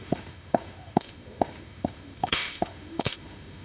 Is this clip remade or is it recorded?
remade